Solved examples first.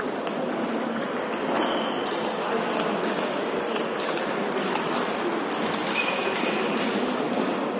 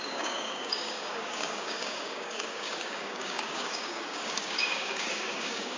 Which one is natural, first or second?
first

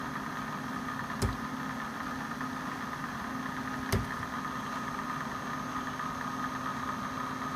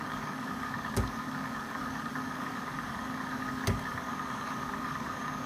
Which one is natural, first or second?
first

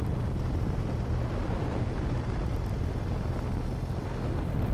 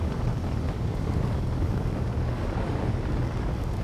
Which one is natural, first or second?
first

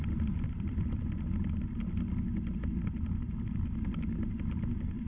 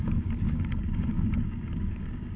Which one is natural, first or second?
first